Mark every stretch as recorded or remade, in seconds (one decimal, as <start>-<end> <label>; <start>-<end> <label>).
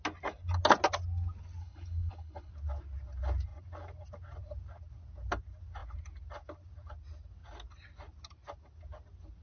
0.0-1.6 recorded; 1.6-2.5 remade; 2.5-9.4 recorded